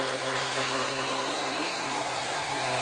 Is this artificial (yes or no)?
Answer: yes